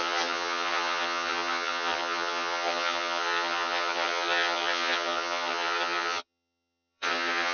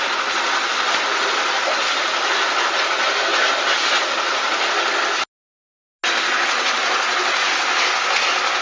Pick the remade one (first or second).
first